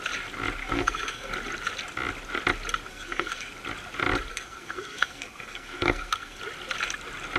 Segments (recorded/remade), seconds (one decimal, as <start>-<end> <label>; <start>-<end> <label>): 0.0-0.6 recorded; 0.6-1.3 remade; 1.3-2.9 recorded; 2.9-3.5 remade; 3.5-4.3 recorded; 4.3-6.4 remade; 6.4-7.4 recorded